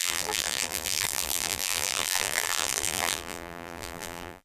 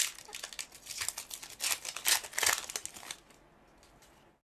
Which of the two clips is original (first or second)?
second